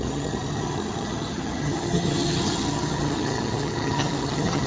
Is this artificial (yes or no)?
yes